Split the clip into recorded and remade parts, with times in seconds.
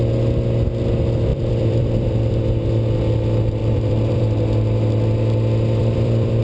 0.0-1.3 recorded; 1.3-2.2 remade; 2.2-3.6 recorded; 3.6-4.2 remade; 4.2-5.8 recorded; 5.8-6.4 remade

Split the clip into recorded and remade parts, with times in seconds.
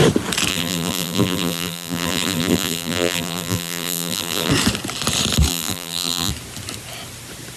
0.0-0.5 recorded; 0.5-4.5 remade; 4.5-5.5 recorded; 5.5-6.3 remade; 6.3-7.6 recorded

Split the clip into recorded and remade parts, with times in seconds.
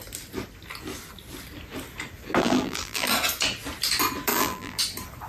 0.0-2.4 recorded; 2.4-3.1 remade; 3.1-4.3 recorded; 4.3-4.8 remade; 4.8-5.3 recorded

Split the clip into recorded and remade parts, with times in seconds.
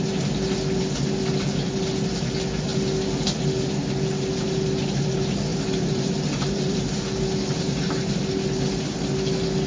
0.0-5.5 recorded; 5.5-6.9 remade; 6.9-9.7 recorded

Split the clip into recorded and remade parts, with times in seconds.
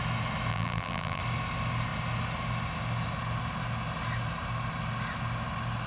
0.0-0.5 recorded; 0.5-1.2 remade; 1.2-5.9 recorded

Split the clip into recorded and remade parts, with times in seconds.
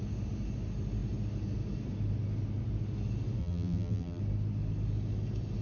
0.0-3.4 recorded; 3.4-4.2 remade; 4.2-5.6 recorded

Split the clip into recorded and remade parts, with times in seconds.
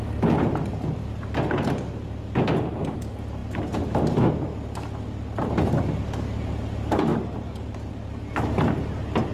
0.0-7.1 recorded; 7.1-8.1 remade; 8.1-9.3 recorded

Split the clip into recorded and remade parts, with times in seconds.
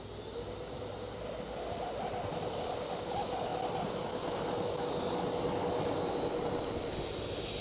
0.0-7.6 recorded